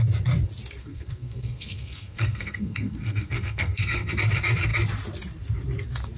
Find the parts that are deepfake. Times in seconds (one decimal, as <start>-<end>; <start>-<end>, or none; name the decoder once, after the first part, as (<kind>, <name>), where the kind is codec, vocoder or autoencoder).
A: 0.8-4.1 (codec, SNAC)